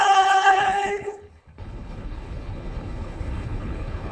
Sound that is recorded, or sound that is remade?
remade